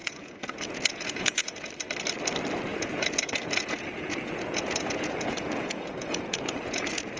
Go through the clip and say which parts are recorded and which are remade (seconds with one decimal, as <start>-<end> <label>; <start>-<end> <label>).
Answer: 0.0-1.7 remade; 1.7-2.7 recorded; 2.7-7.2 remade